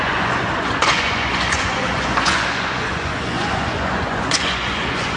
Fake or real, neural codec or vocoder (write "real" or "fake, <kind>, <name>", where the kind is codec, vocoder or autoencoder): fake, vocoder, Vocos